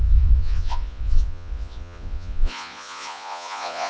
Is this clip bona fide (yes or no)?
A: no